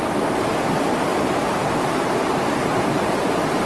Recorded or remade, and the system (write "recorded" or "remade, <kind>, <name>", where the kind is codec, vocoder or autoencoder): remade, vocoder, BigVGAN v2